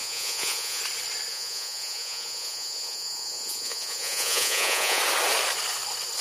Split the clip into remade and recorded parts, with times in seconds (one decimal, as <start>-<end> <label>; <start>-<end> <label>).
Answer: 0.0-0.8 remade; 0.8-1.3 recorded; 1.3-5.0 remade; 5.0-6.2 recorded